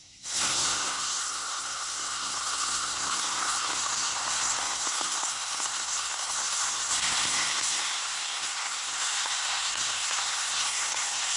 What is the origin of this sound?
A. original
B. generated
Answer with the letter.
B